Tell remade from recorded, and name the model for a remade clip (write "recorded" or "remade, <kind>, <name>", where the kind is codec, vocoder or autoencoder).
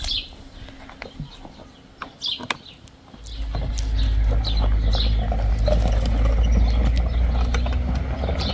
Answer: recorded